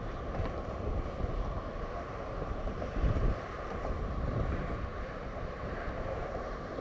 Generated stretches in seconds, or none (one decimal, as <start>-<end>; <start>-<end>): 1.7-5.8